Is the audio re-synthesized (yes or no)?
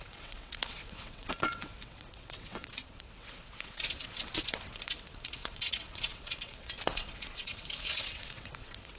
yes